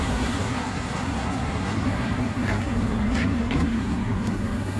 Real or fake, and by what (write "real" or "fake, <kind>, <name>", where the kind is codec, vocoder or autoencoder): fake, codec, SNAC